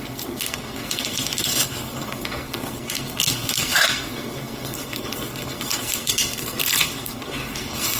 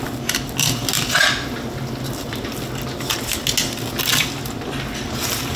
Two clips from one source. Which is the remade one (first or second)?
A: first